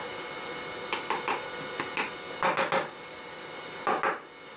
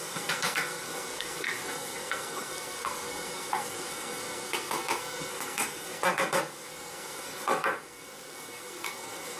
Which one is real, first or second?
first